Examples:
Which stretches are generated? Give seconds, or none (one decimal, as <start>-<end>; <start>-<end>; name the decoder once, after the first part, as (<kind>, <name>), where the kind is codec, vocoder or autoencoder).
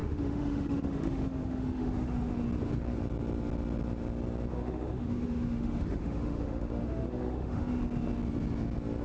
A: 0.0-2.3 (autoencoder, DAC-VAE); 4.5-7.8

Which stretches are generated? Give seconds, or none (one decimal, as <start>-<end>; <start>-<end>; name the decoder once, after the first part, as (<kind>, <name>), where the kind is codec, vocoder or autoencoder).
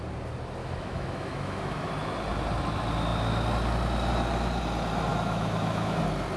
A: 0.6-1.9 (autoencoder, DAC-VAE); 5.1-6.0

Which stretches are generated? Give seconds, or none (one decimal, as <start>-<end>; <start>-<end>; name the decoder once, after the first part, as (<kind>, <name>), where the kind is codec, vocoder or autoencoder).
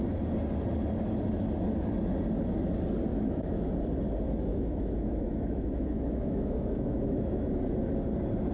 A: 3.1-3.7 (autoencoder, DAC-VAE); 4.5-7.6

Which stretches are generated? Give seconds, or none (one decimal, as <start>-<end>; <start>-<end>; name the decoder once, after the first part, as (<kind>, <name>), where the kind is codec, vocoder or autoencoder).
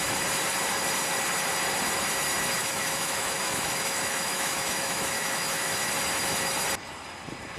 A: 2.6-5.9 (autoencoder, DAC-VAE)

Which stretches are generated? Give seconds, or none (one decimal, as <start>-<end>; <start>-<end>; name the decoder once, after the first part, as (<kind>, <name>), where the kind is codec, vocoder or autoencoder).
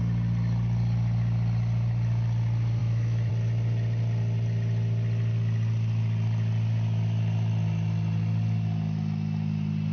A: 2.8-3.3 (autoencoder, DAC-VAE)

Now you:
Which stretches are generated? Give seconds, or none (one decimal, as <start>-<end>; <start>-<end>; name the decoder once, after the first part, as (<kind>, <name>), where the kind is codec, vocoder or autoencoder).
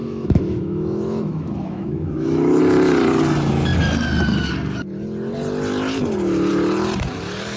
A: 0.0-2.6 (autoencoder, DAC-VAE)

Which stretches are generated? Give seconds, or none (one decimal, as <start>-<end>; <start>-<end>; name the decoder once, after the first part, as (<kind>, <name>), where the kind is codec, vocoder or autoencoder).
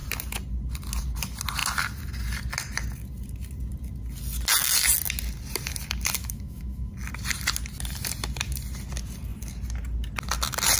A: 6.2-6.9 (autoencoder, DAC-VAE)